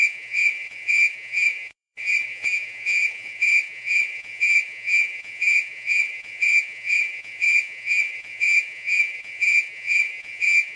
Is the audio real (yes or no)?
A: no